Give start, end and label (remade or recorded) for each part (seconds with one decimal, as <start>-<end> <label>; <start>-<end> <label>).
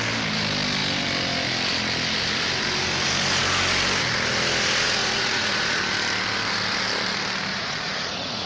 0.0-5.0 recorded; 5.0-5.8 remade; 5.8-7.5 recorded; 7.5-8.5 remade